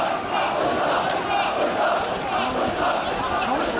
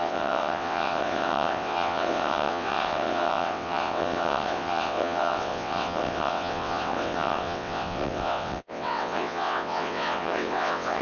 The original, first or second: first